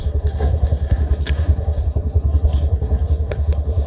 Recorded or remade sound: remade